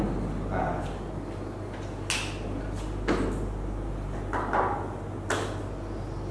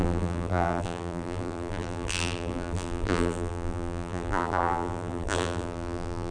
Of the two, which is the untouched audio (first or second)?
first